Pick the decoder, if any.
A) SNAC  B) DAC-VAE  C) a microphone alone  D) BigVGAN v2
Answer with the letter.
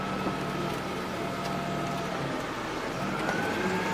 C